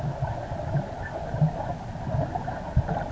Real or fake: real